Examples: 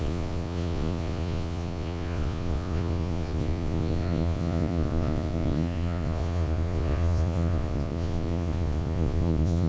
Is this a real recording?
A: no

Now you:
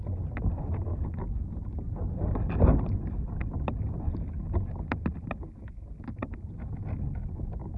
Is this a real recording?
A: yes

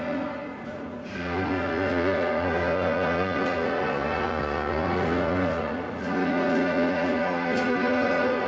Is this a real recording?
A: no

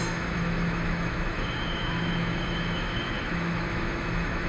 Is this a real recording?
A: no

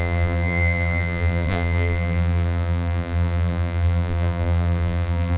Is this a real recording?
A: no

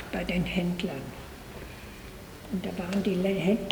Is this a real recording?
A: yes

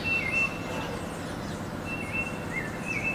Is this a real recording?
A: yes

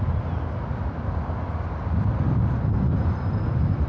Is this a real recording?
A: yes